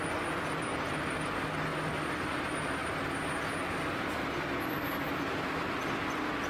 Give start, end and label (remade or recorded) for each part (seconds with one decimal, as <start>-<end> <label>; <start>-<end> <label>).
0.0-6.5 recorded